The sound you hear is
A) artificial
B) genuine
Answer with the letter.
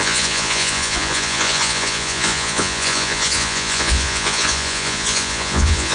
A